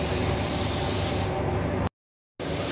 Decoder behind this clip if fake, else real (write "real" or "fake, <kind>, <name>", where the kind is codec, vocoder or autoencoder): real